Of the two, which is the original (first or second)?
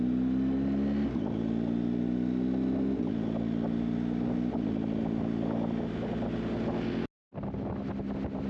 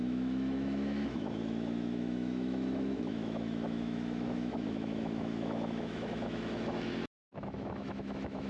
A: first